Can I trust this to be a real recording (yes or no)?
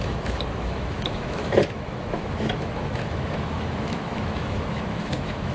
no